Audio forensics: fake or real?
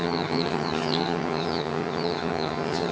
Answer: fake